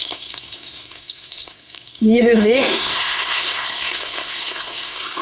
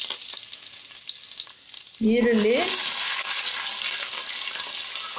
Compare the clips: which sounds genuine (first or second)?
second